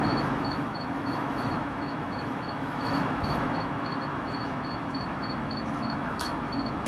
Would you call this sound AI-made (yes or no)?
yes